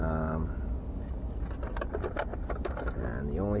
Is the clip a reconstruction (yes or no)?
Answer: no